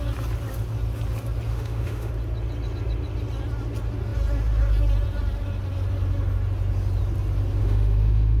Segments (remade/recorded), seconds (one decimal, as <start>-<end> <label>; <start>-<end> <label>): 0.0-1.5 recorded; 1.5-2.1 remade; 2.1-7.6 recorded; 7.6-8.4 remade